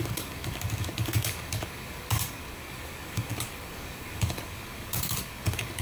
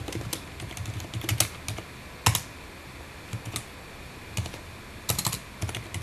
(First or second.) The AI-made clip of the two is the first